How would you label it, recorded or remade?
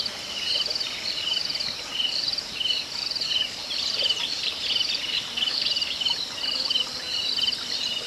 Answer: remade